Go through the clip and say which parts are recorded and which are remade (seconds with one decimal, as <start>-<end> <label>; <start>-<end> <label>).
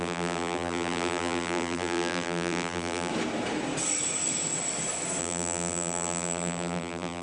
0.0-3.1 remade; 3.1-5.2 recorded; 5.2-7.2 remade